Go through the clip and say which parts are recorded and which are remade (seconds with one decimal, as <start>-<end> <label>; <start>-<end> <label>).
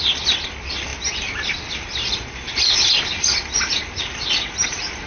0.0-5.1 recorded